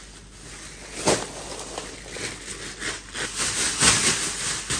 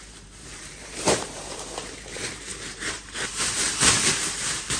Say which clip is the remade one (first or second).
second